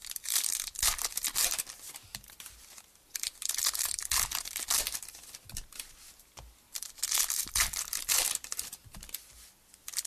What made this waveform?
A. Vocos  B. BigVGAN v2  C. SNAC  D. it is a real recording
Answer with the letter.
D